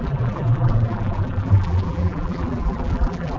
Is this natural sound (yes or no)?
no